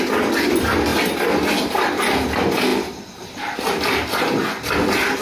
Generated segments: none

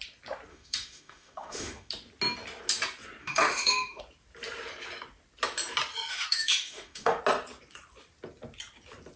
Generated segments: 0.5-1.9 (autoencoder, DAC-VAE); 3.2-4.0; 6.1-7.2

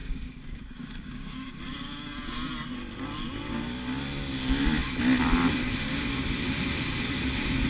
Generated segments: 0.0-1.6 (codec, DAC)

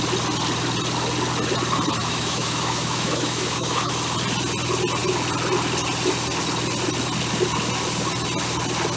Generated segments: 2.0-3.9 (autoencoder, DAC-VAE)